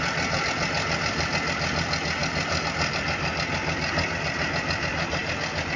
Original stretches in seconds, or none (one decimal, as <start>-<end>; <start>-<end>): 0.0-5.8